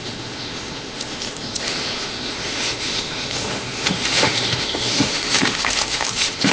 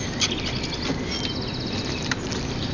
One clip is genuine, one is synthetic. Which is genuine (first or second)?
second